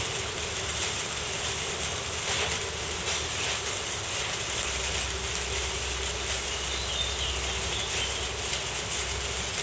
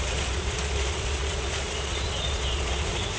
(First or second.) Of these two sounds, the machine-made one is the second